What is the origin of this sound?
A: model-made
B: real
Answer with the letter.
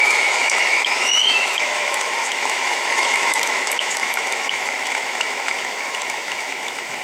A